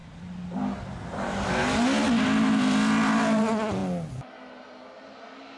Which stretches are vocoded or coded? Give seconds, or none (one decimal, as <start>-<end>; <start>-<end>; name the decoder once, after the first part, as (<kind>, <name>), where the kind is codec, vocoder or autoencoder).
none